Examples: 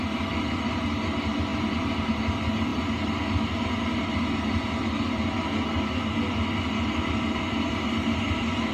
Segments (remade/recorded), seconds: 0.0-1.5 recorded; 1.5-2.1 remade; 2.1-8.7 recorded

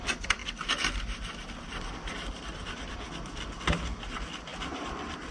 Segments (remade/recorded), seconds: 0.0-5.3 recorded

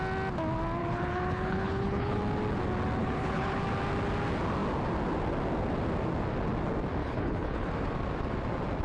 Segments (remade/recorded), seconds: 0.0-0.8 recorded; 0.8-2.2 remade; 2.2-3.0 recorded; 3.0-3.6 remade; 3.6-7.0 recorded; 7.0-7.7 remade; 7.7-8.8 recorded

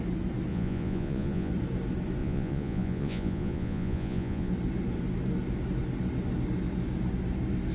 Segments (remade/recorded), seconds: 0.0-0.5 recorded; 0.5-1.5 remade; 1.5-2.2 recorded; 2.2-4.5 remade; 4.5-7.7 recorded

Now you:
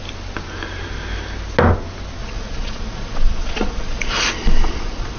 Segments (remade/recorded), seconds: 0.0-2.2 recorded; 2.2-5.2 remade

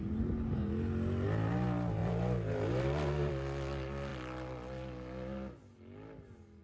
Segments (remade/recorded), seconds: 0.0-2.0 recorded; 2.0-3.3 remade; 3.3-6.6 recorded

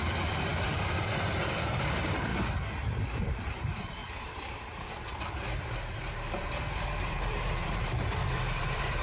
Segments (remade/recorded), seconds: 0.0-2.3 remade; 2.3-3.2 recorded; 3.2-9.0 remade

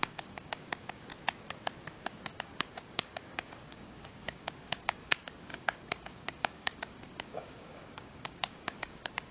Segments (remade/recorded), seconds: 0.0-1.1 remade; 1.1-2.1 recorded; 2.1-9.3 remade